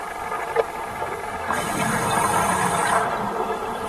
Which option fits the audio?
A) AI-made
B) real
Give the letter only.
B